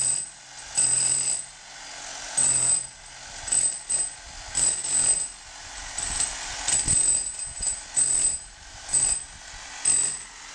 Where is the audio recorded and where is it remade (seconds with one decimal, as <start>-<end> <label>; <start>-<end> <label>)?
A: 0.0-10.5 recorded